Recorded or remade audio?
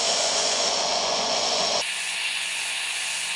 remade